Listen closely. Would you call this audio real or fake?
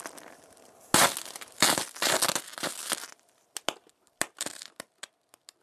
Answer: real